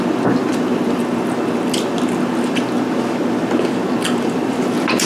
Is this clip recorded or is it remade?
recorded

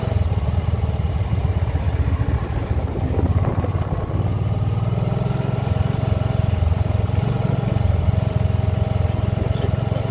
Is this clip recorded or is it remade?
recorded